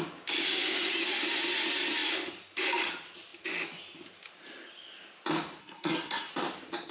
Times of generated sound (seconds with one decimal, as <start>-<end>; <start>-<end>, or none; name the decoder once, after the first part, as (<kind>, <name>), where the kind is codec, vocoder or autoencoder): 5.6-6.3 (codec, SNAC)